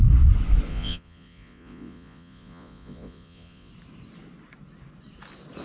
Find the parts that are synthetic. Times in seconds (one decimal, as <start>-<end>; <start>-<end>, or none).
0.7-3.7